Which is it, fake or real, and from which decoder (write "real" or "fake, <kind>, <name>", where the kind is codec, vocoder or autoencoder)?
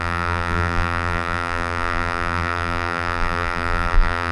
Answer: fake, vocoder, BigVGAN v2